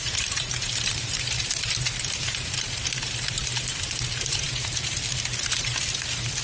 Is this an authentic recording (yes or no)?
no